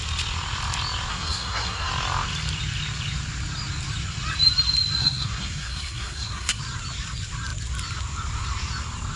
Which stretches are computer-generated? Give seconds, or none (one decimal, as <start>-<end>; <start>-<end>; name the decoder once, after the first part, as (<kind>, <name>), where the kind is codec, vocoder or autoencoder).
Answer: 1.1-1.9 (codec, SNAC); 5.0-6.6